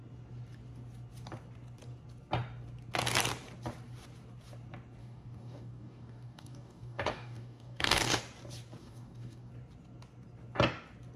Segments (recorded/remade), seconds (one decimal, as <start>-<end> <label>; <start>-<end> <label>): 0.0-5.0 recorded; 5.0-8.2 remade; 8.2-8.8 recorded; 8.8-9.5 remade; 9.5-11.2 recorded